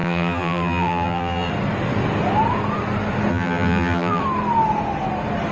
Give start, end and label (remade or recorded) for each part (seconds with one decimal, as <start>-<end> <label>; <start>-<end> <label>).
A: 0.0-1.5 remade; 1.5-3.3 recorded; 3.3-4.2 remade; 4.2-5.5 recorded